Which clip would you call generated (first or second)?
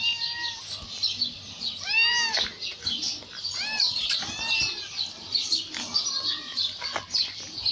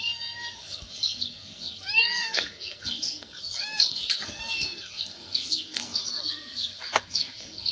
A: second